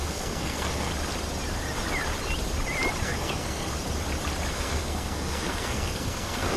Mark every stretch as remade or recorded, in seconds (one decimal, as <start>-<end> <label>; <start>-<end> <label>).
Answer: 0.0-0.9 remade; 0.9-3.0 recorded; 3.0-3.7 remade; 3.7-4.5 recorded; 4.5-6.6 remade